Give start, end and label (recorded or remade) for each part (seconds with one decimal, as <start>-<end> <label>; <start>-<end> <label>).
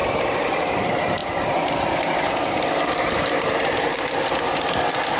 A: 0.0-0.7 remade; 0.7-1.2 recorded; 1.2-4.3 remade; 4.3-5.2 recorded